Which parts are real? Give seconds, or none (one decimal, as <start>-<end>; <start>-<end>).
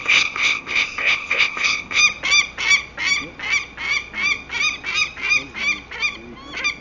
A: 2.0-6.8